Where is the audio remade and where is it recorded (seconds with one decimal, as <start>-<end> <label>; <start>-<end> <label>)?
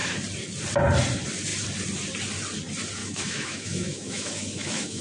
0.0-3.0 recorded; 3.0-5.0 remade